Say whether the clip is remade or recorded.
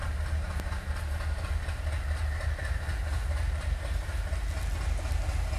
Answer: recorded